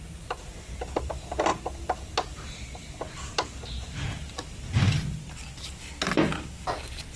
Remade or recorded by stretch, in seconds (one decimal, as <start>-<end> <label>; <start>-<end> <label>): 0.0-7.2 recorded